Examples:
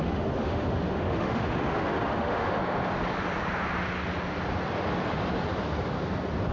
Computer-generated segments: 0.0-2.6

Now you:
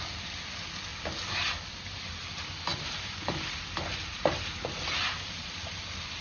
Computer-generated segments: 2.7-3.3

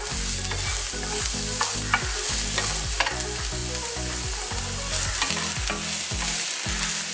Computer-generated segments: none

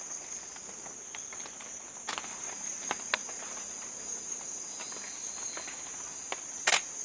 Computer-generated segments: none

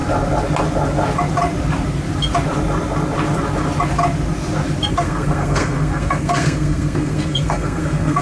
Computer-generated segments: 4.9-8.2

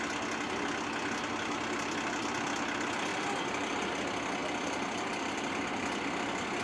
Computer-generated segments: 3.1-3.9; 4.4-5.5